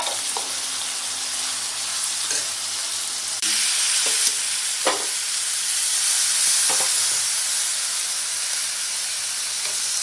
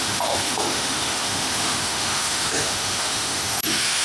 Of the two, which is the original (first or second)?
first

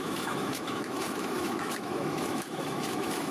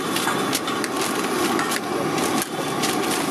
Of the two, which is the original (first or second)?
second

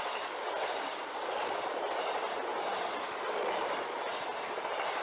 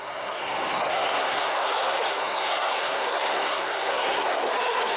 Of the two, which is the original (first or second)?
first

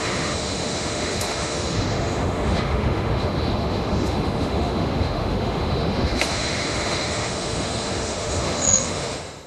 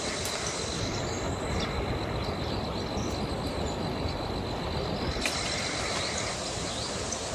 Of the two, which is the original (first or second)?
second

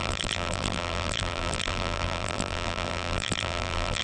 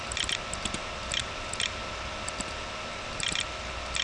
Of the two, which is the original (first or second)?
second